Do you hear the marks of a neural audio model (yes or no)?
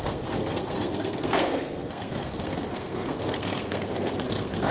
yes